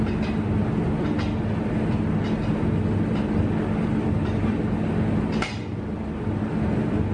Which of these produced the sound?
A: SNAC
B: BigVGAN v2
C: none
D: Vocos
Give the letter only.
C